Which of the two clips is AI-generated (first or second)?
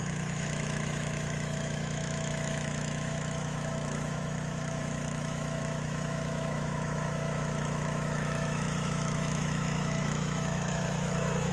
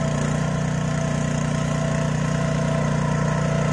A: first